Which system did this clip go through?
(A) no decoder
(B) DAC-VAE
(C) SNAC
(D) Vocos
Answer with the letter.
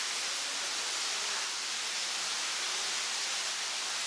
A